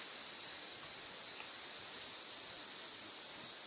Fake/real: real